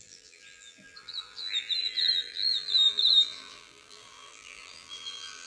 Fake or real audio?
fake